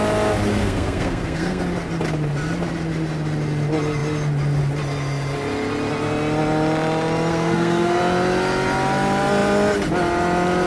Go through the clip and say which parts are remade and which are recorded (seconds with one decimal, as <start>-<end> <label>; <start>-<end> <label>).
0.0-0.5 recorded; 0.5-1.6 remade; 1.6-7.3 recorded; 7.3-8.0 remade; 8.0-10.7 recorded

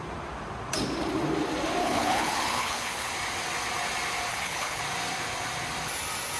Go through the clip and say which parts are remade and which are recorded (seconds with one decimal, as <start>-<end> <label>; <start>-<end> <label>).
0.0-1.8 recorded; 1.8-3.1 remade; 3.1-4.3 recorded; 4.3-4.8 remade; 4.8-6.4 recorded

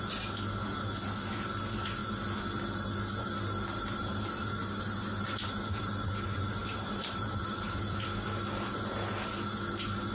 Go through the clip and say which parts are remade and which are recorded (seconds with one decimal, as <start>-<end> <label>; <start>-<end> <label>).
0.0-6.6 recorded; 6.6-8.1 remade; 8.1-10.1 recorded

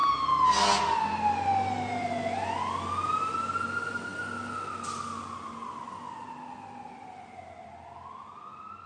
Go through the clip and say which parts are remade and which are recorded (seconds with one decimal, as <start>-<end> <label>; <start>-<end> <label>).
0.0-8.9 recorded

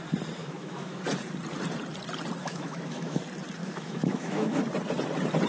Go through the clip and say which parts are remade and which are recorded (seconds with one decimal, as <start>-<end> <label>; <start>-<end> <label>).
0.0-0.4 recorded; 0.4-1.0 remade; 1.0-2.4 recorded; 2.4-3.2 remade; 3.2-3.6 recorded; 3.6-4.6 remade; 4.6-5.5 recorded

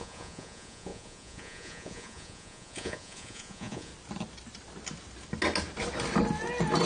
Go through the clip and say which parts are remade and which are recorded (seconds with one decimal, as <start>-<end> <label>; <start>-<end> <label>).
0.0-3.9 remade; 3.9-6.9 recorded

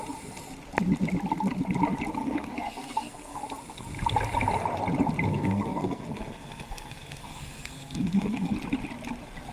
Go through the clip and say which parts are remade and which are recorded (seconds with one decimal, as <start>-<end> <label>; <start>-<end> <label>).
0.0-2.2 recorded; 2.2-3.4 remade; 3.4-5.3 recorded; 5.3-8.5 remade; 8.5-9.5 recorded